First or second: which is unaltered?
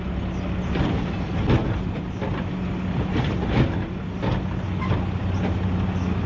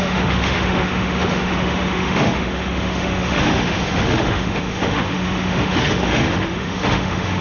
first